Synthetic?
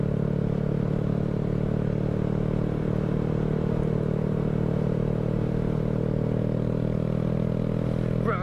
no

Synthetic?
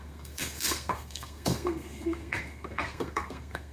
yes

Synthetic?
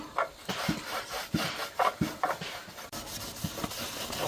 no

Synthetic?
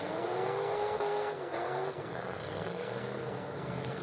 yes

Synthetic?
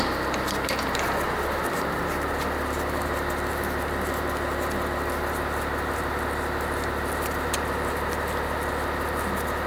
no